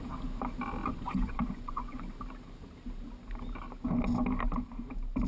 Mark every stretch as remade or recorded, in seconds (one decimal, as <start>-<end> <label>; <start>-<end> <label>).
0.0-0.8 recorded; 0.8-2.0 remade; 2.0-5.3 recorded